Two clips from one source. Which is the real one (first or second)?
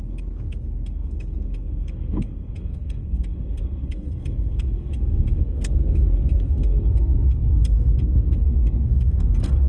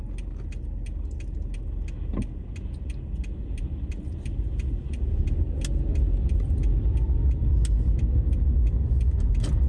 second